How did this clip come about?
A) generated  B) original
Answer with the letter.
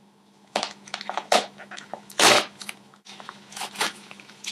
A